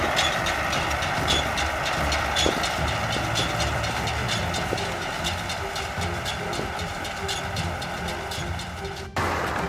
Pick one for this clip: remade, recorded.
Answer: recorded